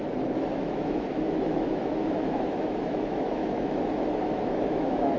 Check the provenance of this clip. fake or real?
fake